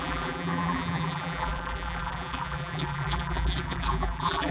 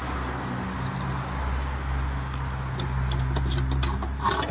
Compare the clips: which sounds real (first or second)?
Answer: second